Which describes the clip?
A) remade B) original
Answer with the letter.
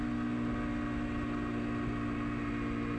B